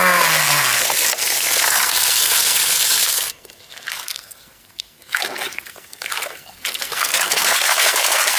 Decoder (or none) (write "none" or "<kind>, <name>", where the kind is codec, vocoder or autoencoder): codec, SNAC